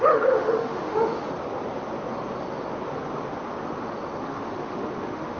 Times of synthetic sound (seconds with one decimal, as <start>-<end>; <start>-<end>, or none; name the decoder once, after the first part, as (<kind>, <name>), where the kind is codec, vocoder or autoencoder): 0.0-1.0 (autoencoder, DAC-VAE); 4.2-5.4